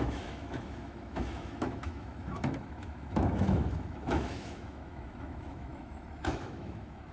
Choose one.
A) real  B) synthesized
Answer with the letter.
B